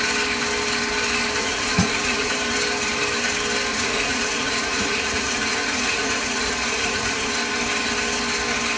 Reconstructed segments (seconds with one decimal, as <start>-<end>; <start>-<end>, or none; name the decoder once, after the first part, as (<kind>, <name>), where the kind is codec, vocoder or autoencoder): 1.4-2.3 (vocoder, Vocos); 3.7-7.3